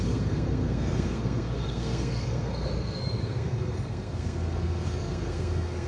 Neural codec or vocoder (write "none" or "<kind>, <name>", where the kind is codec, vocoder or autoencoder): codec, SNAC